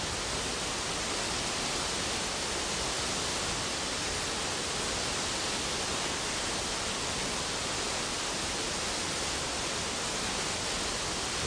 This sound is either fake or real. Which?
real